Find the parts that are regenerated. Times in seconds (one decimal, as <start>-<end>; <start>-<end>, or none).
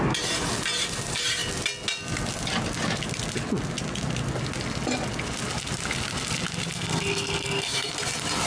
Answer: 6.7-7.9